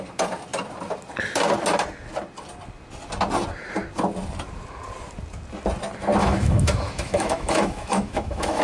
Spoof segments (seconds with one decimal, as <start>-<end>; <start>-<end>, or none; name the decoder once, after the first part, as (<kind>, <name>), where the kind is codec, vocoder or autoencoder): 6.2-8.6 (autoencoder, DAC-VAE)